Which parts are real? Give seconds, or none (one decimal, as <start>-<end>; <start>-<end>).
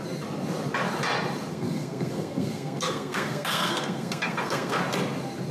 0.0-1.5; 4.8-5.5